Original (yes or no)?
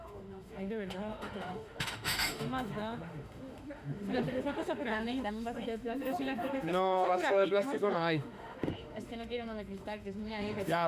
no